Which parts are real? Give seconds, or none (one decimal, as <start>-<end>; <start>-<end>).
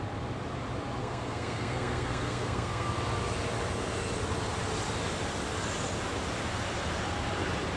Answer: 0.0-1.0; 2.9-7.8